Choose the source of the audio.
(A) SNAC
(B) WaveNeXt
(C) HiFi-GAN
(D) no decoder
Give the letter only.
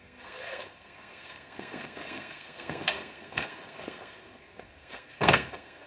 A